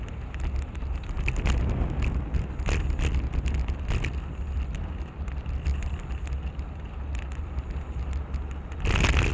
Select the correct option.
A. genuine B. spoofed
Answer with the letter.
A